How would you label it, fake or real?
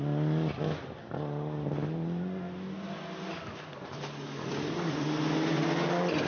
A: real